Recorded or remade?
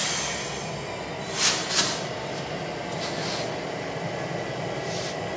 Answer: recorded